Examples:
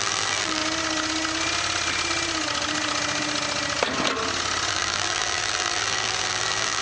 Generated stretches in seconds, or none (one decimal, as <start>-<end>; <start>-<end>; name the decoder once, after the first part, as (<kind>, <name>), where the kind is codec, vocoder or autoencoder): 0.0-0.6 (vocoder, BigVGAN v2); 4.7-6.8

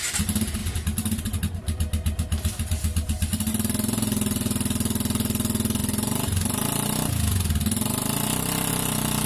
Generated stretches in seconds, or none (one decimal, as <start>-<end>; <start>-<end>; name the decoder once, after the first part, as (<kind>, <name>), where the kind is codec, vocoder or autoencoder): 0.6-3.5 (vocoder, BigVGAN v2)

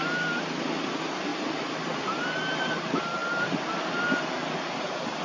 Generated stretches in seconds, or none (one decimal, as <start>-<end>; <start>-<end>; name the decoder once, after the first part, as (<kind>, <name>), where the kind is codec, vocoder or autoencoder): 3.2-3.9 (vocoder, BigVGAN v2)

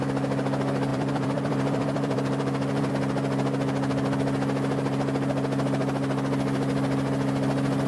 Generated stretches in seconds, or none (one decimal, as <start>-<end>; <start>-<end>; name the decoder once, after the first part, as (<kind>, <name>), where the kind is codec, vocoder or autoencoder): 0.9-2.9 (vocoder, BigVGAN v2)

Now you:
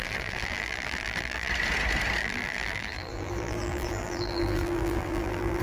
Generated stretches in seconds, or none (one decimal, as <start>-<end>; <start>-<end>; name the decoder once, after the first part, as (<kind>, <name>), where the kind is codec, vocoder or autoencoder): 0.0-1.5 (vocoder, BigVGAN v2); 2.2-5.6

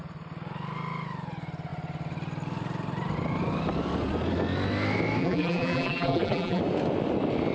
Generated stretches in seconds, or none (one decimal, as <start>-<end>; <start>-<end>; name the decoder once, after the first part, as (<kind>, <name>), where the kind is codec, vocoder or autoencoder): 5.2-6.6 (vocoder, BigVGAN v2)

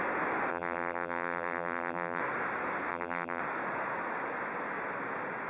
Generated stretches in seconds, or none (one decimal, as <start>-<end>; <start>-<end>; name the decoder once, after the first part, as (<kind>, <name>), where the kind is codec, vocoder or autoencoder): 0.5-2.2 (vocoder, BigVGAN v2); 2.9-3.4

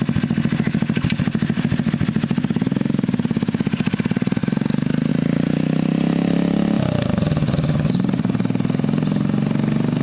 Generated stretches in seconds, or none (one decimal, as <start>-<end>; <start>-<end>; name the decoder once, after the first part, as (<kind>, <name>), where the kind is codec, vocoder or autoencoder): 4.4-5.1 (vocoder, BigVGAN v2)